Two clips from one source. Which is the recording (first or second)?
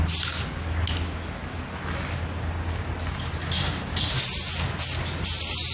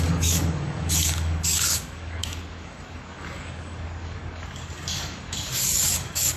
first